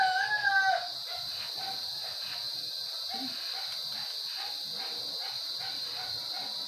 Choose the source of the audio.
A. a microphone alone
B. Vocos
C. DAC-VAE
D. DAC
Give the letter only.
A